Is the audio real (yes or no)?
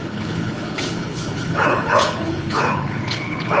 no